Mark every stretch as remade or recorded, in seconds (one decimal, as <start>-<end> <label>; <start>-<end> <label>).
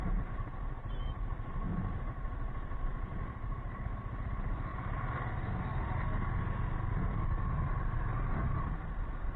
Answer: 0.0-4.7 remade; 4.7-7.7 recorded; 7.7-9.4 remade